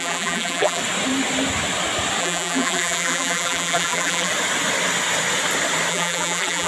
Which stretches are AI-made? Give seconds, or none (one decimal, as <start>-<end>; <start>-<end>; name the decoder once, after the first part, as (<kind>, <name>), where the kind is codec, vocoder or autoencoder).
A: 0.0-0.8 (vocoder, BigVGAN v2); 2.2-4.3; 5.9-6.7